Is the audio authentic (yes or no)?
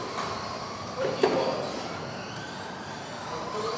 yes